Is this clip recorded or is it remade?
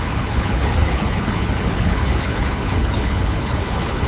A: remade